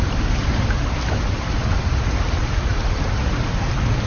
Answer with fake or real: real